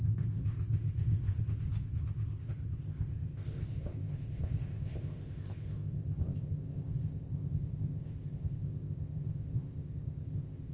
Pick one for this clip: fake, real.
fake